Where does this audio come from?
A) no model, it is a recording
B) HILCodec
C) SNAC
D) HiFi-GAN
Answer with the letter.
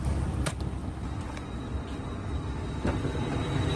A